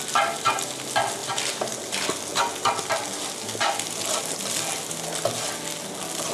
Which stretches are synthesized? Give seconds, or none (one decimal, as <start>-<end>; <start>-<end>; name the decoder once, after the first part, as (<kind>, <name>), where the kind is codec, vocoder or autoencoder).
none